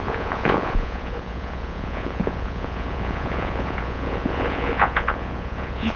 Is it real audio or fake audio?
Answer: fake